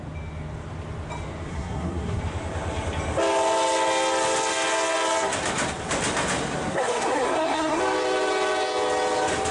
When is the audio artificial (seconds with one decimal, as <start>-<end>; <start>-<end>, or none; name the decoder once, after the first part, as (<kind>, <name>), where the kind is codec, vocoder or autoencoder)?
1.5-2.2 (codec, SNAC); 6.7-7.8